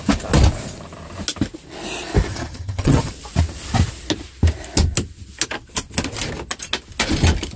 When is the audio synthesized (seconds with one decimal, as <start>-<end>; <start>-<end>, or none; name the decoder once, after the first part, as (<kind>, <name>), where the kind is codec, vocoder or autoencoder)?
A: 2.3-3.1 (vocoder, HiFi-GAN)